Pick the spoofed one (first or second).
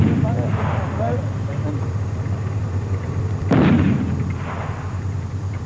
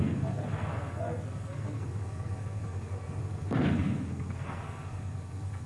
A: second